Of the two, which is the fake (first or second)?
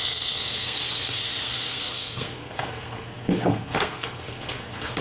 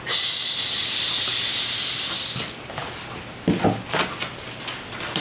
first